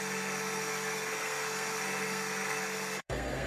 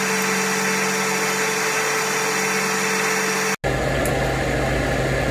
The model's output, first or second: first